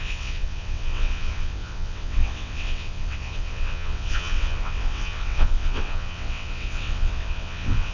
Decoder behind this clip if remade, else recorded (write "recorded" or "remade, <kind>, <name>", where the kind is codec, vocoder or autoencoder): remade, vocoder, WaveNeXt